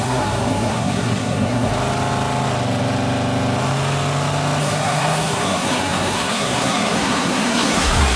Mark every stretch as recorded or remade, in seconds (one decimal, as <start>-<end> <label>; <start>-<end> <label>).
0.0-1.7 remade; 1.7-4.6 recorded; 4.6-8.2 remade